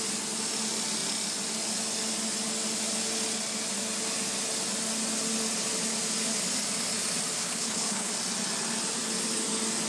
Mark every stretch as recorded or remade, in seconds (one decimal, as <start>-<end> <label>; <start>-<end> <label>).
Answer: 0.0-7.4 recorded; 7.4-8.1 remade; 8.1-9.9 recorded

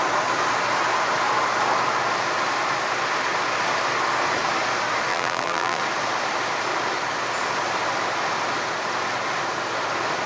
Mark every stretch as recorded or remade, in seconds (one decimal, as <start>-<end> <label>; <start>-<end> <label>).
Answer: 0.0-5.1 recorded; 5.1-5.8 remade; 5.8-10.3 recorded

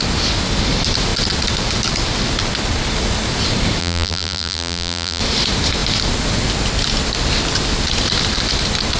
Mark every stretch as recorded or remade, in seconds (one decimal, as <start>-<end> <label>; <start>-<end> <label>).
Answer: 0.0-3.8 recorded; 3.8-5.2 remade; 5.2-9.0 recorded

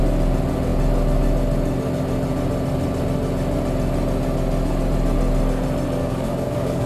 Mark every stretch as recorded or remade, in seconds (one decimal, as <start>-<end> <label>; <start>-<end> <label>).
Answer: 0.0-6.0 recorded; 6.0-6.9 remade

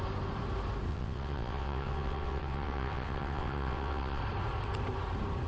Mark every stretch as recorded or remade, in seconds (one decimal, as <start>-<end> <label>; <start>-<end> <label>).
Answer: 0.0-0.9 recorded; 0.9-4.2 remade; 4.2-5.5 recorded